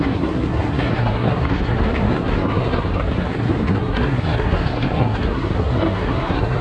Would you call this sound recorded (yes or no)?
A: no